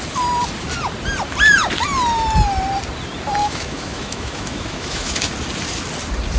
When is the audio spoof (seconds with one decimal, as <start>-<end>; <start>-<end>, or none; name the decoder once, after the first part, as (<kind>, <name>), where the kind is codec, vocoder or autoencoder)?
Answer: 3.4-5.3 (autoencoder, DAC-VAE)